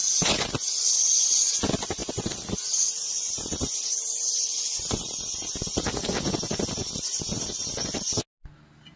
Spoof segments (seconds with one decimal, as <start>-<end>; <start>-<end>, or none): none

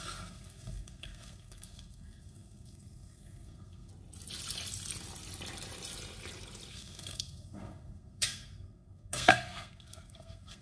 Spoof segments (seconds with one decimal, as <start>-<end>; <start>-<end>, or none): 0.0-3.9; 6.7-10.6

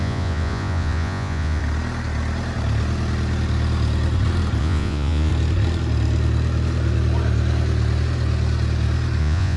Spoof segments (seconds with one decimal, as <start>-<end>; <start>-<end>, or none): 0.0-1.6; 4.6-5.3; 9.2-9.6

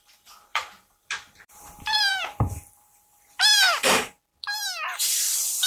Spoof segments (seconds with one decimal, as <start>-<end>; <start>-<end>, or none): 0.5-3.9; 4.3-5.2